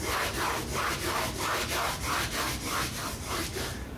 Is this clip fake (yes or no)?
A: yes